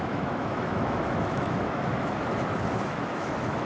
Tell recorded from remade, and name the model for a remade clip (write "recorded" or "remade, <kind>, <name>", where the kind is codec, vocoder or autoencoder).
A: remade, autoencoder, DAC-VAE